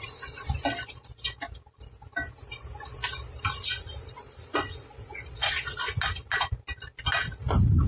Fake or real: real